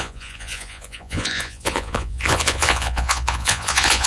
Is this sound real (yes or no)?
no